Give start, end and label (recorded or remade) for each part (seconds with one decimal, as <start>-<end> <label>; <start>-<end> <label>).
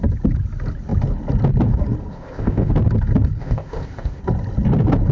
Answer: 0.0-2.1 recorded; 2.1-2.7 remade; 2.7-3.4 recorded; 3.4-4.2 remade; 4.2-5.1 recorded